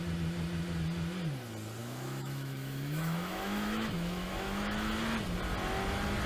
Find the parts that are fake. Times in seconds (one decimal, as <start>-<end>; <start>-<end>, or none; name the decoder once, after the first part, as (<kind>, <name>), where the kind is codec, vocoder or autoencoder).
1.8-4.9 (autoencoder, DAC-VAE)